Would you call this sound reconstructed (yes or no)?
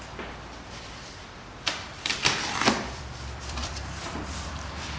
yes